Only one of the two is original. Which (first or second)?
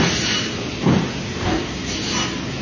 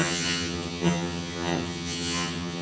first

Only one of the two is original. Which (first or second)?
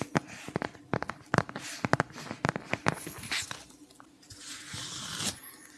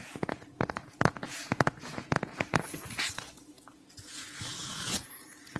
first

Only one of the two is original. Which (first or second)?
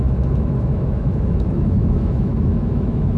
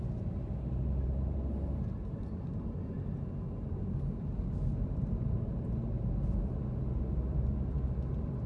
second